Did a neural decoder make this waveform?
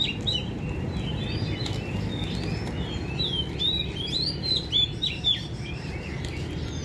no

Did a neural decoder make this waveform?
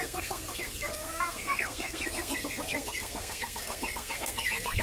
yes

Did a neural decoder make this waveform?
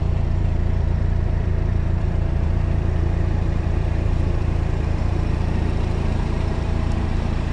yes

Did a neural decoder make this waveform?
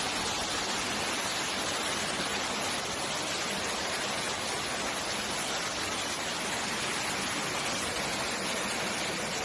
no